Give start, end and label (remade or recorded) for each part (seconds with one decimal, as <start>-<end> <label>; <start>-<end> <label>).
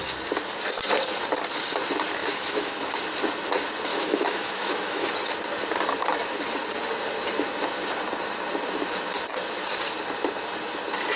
0.0-2.2 recorded; 2.2-2.8 remade; 2.8-3.9 recorded; 3.9-5.1 remade; 5.1-11.2 recorded